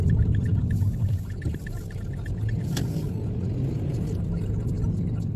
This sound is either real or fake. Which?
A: real